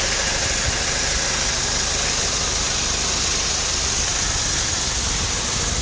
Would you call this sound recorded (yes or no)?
yes